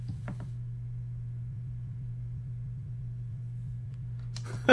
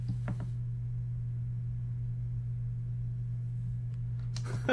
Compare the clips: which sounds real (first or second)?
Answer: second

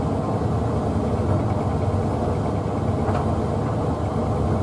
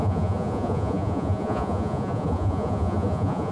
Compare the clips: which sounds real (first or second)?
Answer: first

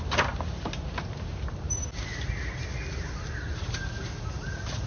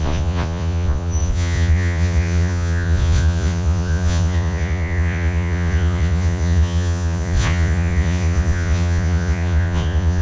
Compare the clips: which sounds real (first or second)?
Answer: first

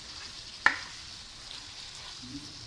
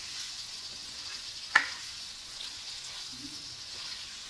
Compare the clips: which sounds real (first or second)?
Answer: first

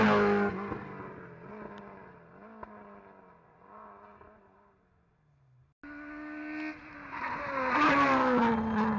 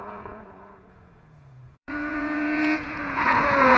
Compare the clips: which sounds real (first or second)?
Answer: first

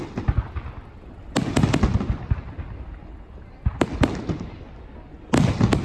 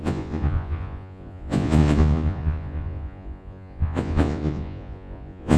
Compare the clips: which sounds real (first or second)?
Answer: first